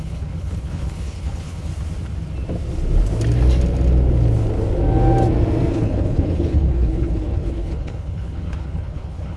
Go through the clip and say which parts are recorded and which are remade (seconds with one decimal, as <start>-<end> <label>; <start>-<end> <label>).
0.0-1.7 remade; 1.7-5.7 recorded; 5.7-9.4 remade